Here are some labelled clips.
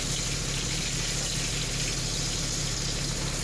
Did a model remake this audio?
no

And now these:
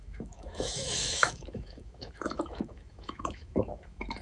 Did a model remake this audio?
yes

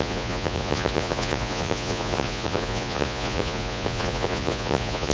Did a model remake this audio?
yes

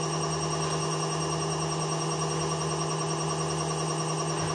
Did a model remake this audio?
no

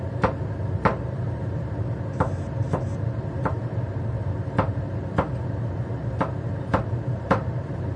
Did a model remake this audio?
yes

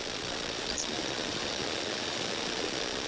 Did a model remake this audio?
yes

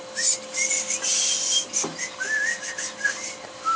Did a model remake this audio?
no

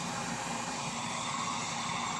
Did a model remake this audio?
no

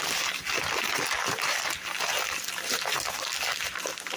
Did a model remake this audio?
no